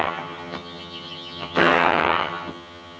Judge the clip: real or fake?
fake